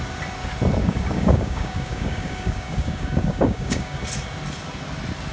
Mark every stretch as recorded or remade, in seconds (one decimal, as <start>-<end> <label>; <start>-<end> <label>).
0.0-0.8 recorded; 0.8-4.0 remade; 4.0-5.3 recorded

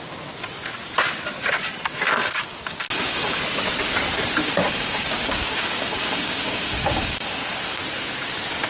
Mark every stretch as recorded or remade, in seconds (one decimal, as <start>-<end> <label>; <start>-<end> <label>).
0.0-2.2 recorded; 2.2-3.4 remade; 3.4-4.6 recorded; 4.6-7.8 remade; 7.8-8.7 recorded

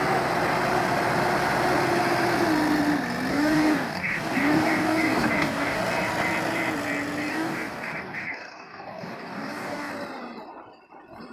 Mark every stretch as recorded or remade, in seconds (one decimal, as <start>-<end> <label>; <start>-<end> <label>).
0.0-3.3 recorded; 3.3-5.8 remade; 5.8-7.3 recorded; 7.3-9.9 remade; 9.9-11.3 recorded

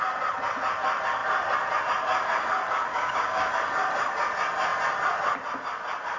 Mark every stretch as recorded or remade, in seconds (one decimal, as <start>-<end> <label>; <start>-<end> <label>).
0.0-2.9 recorded; 2.9-3.5 remade; 3.5-6.2 recorded